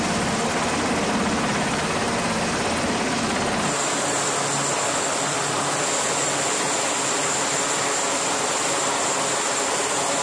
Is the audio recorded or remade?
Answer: recorded